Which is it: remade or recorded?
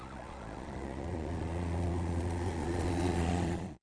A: remade